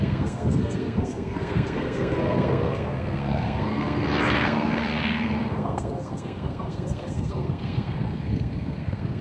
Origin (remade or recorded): remade